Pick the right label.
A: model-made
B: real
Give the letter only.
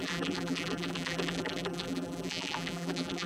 A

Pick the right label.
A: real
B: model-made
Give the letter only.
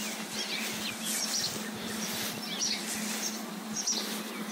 A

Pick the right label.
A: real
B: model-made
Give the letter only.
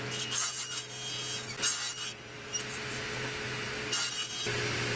A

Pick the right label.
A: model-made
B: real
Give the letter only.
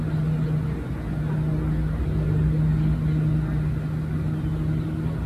B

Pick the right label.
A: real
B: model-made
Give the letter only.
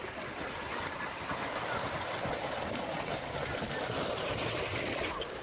A